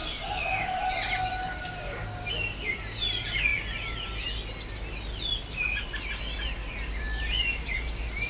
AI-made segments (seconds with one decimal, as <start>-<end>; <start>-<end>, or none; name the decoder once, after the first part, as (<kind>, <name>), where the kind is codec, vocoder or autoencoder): 0.0-0.9 (codec, DAC); 1.4-2.3